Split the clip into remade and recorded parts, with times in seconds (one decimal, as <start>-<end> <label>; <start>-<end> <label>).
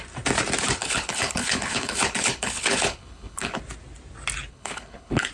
0.0-0.8 recorded; 0.8-3.6 remade; 3.6-4.5 recorded; 4.5-5.3 remade